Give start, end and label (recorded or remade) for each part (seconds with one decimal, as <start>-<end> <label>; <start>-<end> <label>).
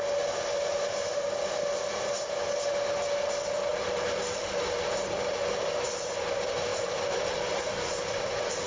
0.0-3.7 recorded; 3.7-5.2 remade; 5.2-6.7 recorded; 6.7-7.6 remade; 7.6-8.7 recorded